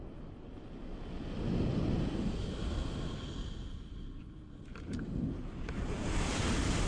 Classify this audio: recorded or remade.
recorded